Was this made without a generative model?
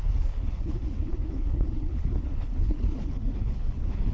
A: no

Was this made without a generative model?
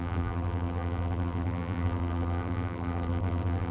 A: no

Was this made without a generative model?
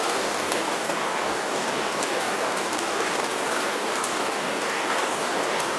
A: no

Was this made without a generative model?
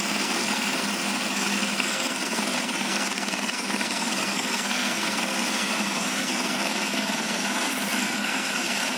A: no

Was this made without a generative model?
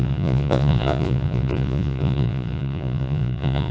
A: no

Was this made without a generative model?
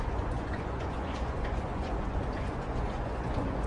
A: no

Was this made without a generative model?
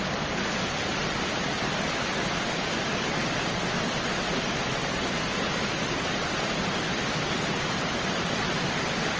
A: yes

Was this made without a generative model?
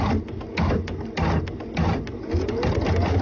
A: yes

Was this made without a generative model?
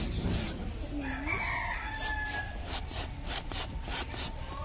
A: yes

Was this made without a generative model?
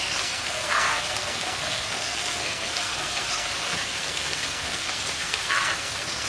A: no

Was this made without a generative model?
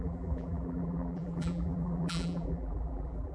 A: no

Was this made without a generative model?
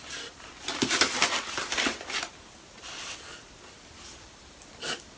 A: no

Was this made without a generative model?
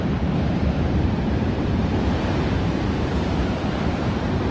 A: no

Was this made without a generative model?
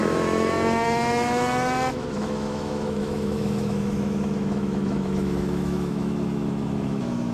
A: no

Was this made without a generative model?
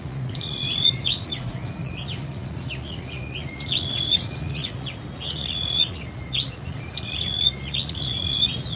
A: no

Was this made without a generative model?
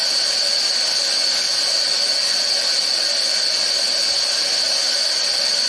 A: yes